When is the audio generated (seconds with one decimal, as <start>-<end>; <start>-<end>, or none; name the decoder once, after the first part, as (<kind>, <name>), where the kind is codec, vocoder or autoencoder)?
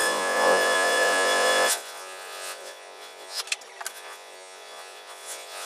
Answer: 0.0-3.4 (vocoder, Vocos); 3.9-5.7